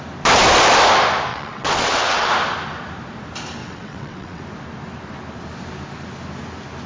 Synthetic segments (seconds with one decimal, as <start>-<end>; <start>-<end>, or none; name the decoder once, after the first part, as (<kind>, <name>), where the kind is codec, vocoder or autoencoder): 1.3-2.3 (vocoder, WaveNeXt); 3.6-4.4

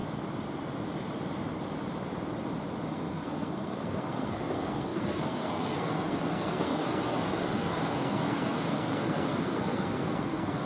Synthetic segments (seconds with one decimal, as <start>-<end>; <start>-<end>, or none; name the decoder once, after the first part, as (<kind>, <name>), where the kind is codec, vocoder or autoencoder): 2.9-10.7 (codec, SNAC)

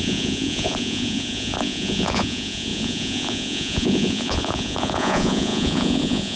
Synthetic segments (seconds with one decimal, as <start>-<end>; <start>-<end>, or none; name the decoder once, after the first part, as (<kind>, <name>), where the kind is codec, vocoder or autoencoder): 0.0-6.4 (vocoder, Vocos)

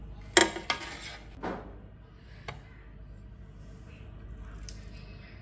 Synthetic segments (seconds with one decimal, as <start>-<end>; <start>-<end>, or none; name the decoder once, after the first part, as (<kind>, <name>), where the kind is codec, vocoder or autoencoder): none

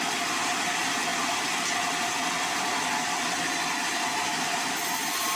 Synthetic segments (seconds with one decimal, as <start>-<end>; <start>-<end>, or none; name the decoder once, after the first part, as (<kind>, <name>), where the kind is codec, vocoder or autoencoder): none

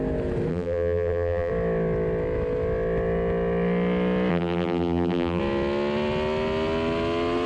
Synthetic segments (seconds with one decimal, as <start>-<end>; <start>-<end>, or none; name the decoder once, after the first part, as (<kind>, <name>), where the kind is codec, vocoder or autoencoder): 0.5-1.5 (vocoder, BigVGAN v2); 4.3-5.4

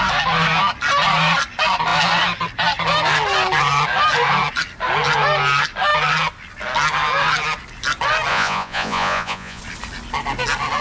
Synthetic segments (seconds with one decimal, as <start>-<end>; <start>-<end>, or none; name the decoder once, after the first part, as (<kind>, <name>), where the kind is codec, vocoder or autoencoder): 8.3-9.6 (vocoder, Vocos)

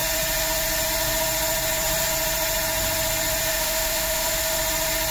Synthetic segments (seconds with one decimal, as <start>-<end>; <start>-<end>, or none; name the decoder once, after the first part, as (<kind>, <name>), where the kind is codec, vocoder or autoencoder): 3.5-4.6 (autoencoder, DAC-VAE)